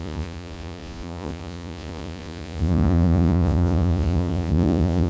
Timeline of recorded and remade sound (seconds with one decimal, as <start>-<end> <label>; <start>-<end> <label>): 0.0-5.1 remade